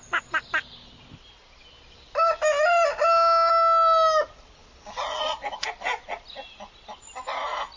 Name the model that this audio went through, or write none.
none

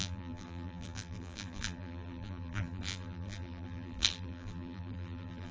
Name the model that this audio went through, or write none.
vocoder, BigVGAN v2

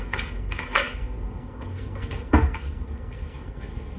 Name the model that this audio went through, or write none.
codec, SNAC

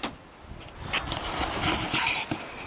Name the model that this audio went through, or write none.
none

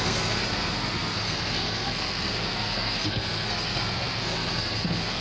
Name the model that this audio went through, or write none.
codec, SNAC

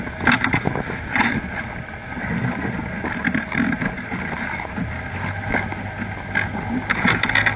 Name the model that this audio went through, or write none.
none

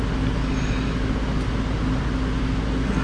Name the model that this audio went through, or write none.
none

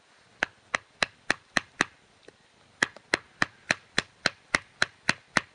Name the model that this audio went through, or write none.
none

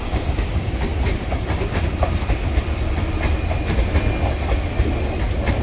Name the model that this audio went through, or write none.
none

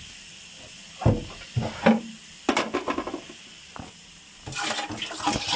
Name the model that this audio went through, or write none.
none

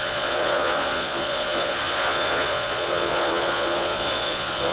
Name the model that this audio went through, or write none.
vocoder, Vocos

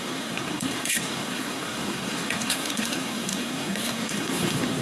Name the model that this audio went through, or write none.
codec, SNAC